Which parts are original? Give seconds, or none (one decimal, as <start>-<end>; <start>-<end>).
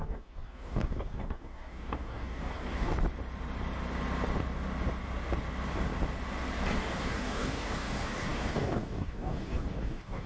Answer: 2.9-6.8